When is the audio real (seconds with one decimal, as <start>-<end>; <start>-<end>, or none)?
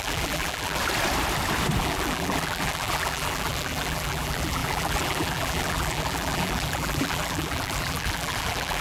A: 0.8-1.8